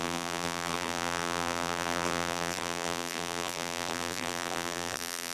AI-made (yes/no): yes